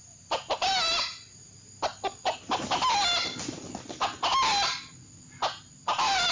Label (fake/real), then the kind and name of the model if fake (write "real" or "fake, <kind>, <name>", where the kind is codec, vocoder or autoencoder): real